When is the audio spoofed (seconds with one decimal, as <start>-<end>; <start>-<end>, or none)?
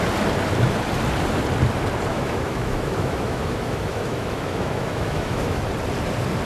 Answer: 2.1-5.6